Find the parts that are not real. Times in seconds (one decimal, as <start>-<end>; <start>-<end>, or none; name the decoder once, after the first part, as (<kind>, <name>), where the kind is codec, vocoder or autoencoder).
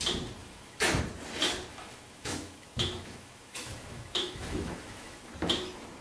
0.4-1.0 (autoencoder, DAC-VAE); 1.7-5.3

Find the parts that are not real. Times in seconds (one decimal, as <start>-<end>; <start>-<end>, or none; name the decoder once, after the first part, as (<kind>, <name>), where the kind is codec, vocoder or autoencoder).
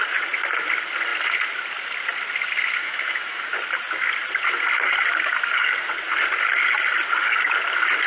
2.8-3.4 (autoencoder, DAC-VAE)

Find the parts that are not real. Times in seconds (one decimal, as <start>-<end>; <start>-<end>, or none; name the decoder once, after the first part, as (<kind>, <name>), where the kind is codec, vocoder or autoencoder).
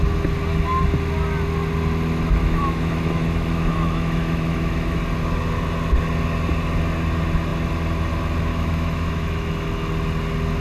2.4-5.0 (autoencoder, DAC-VAE); 8.5-9.7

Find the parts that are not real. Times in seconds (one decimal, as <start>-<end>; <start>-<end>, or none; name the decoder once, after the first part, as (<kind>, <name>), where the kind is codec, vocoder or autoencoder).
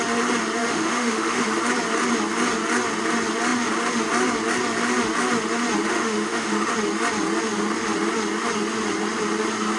0.6-1.6 (autoencoder, DAC-VAE); 5.9-6.7